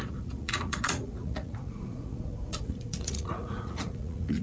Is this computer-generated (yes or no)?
yes